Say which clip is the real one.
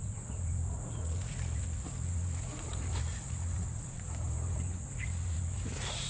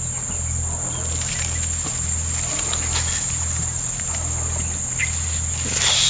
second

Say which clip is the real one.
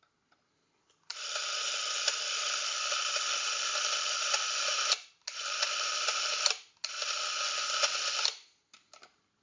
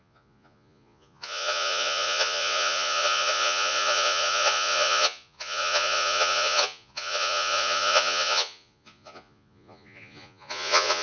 first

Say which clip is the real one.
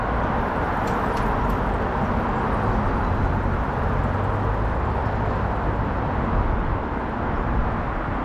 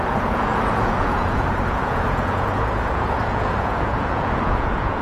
first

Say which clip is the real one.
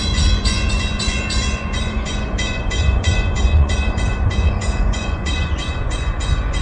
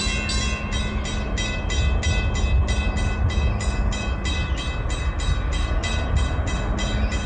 second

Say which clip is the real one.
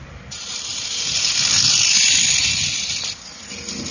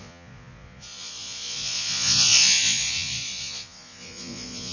first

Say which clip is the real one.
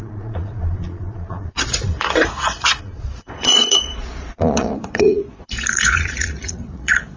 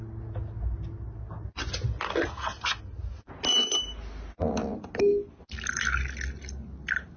second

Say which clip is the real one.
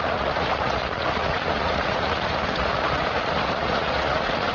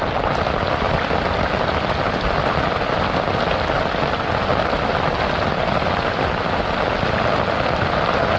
second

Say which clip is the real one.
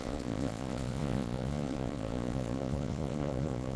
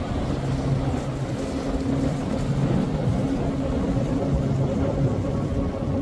second